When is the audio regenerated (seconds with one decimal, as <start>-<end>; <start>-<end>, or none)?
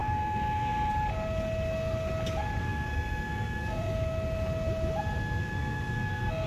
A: 0.0-0.9; 2.6-3.9; 5.4-6.5